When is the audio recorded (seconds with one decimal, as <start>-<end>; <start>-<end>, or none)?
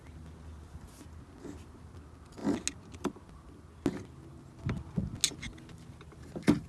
0.0-6.7